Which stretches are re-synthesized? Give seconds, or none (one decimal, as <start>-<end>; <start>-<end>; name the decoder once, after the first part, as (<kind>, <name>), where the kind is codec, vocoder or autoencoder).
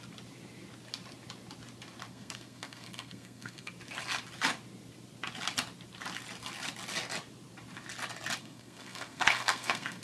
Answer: 2.1-3.7 (codec, SNAC); 8.4-10.0